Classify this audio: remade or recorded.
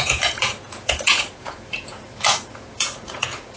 remade